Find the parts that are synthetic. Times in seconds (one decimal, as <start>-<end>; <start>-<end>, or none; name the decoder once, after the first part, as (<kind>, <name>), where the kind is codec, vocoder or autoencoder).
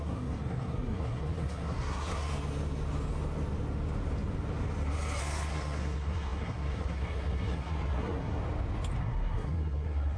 0.0-2.3 (codec, SNAC); 5.2-8.4; 9.0-10.2